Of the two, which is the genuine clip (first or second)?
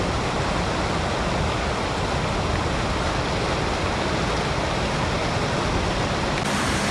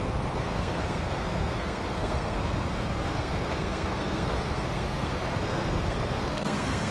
first